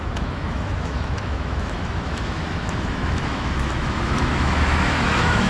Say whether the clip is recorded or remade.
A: remade